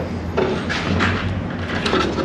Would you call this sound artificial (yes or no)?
no